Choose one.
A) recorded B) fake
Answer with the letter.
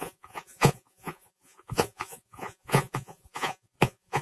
B